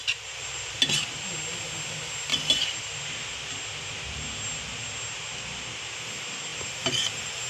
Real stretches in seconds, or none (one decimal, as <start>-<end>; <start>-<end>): 0.0-2.3; 3.0-6.5; 7.1-7.5